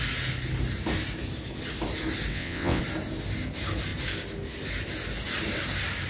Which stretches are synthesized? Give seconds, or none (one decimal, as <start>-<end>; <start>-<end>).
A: 2.3-2.8